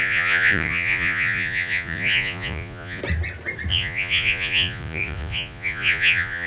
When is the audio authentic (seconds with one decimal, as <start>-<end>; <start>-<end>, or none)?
3.0-3.7